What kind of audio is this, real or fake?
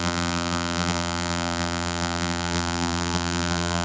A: fake